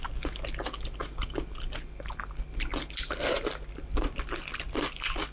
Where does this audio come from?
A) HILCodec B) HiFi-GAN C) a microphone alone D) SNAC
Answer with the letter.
C